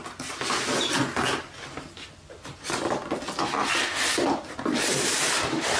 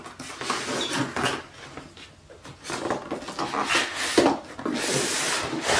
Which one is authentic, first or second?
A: second